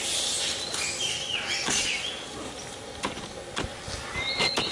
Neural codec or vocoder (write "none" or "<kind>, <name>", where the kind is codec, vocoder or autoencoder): none